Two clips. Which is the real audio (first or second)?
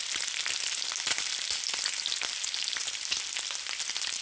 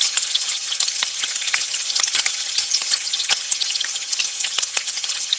first